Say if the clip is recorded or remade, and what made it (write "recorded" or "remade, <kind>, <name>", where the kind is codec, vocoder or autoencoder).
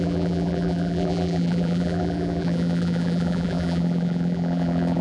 remade, vocoder, BigVGAN v2